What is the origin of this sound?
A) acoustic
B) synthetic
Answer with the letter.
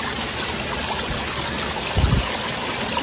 A